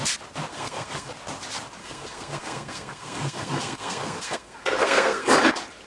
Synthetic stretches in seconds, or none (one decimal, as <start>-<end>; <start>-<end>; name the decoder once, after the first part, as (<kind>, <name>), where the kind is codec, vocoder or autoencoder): 0.5-1.1 (codec, SNAC); 1.8-5.3